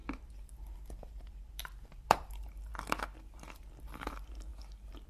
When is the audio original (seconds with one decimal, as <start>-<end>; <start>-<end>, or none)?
2.7-3.7; 4.5-5.1